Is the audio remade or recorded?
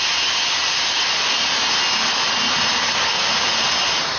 recorded